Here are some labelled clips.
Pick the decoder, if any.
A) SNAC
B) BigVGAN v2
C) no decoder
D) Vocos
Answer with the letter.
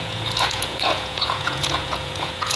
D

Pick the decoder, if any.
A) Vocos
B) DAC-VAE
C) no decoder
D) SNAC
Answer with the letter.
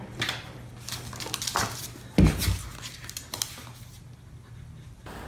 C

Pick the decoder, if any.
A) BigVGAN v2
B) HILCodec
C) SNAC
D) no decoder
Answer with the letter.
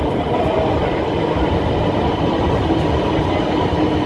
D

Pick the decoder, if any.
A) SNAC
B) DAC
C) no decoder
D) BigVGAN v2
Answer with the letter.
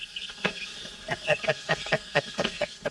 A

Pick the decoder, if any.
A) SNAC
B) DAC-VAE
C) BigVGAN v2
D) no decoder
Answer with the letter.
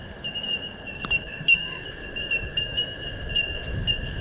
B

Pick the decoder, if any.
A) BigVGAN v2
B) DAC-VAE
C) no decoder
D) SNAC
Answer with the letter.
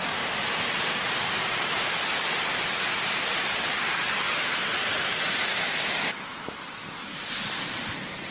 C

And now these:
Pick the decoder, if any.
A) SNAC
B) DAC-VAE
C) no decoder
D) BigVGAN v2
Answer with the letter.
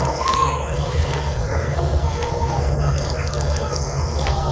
A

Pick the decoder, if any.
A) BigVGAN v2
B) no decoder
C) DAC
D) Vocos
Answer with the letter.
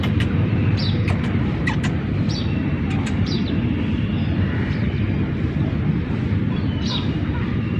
A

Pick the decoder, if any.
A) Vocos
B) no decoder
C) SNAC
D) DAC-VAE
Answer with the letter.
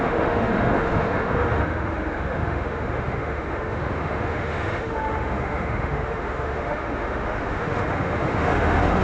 D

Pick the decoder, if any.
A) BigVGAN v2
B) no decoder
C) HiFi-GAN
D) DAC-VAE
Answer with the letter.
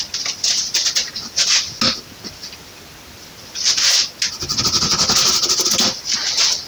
B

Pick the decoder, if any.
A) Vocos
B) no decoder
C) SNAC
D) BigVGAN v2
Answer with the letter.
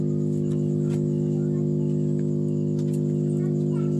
B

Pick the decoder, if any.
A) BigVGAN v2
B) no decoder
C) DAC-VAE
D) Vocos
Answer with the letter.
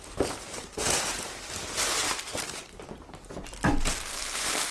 B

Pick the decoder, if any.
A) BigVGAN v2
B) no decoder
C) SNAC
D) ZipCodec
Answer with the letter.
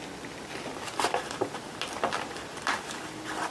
B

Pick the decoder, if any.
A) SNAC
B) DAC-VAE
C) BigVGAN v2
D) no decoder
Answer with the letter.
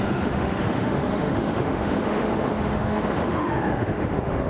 B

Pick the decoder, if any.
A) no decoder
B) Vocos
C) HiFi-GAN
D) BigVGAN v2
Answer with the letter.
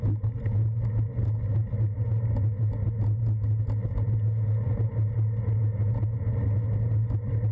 A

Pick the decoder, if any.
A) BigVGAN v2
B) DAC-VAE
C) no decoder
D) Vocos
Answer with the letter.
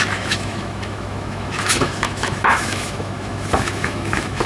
B